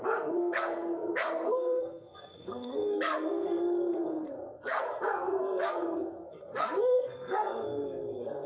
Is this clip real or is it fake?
fake